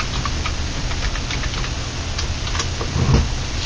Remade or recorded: recorded